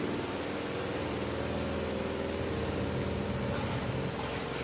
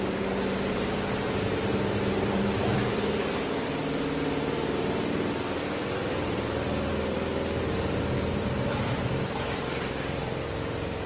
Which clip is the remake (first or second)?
second